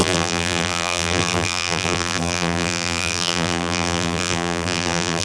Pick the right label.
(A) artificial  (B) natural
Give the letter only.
A